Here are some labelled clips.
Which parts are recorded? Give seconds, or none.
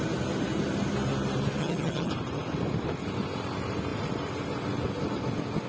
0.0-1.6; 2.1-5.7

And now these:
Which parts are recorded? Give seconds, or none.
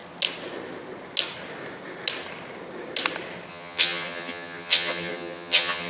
0.0-3.5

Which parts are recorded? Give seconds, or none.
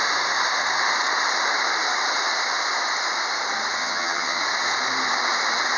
0.0-3.8; 4.4-5.8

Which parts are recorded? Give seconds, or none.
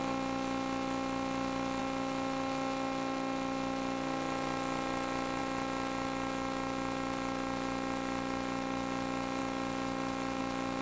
0.0-10.8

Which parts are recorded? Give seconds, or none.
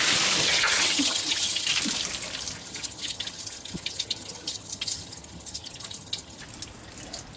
0.0-0.4; 1.7-2.6; 6.4-7.4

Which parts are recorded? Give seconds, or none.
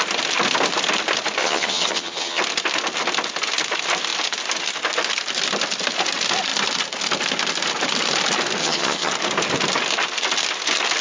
0.0-1.4; 2.4-8.6; 9.1-11.0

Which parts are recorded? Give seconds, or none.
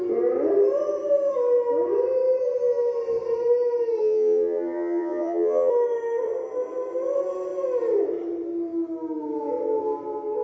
0.0-4.0; 5.7-10.4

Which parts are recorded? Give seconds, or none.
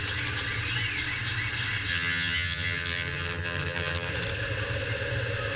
0.0-1.9; 4.1-5.6